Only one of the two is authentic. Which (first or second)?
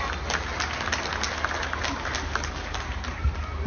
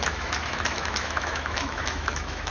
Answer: first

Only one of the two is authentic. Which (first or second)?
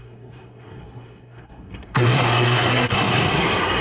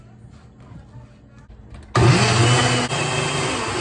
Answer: second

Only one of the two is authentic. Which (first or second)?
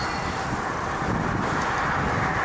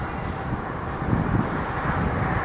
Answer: first